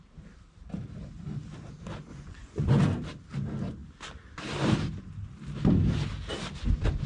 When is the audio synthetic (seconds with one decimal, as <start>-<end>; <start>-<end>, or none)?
2.1-2.7